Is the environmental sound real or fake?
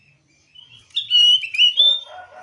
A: real